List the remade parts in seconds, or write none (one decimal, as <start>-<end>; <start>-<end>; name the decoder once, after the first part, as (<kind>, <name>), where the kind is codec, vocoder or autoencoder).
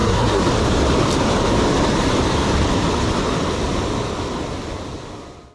0.0-0.5 (codec, SNAC)